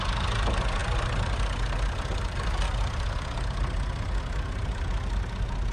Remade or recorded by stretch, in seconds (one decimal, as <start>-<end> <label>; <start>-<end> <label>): 0.0-5.7 recorded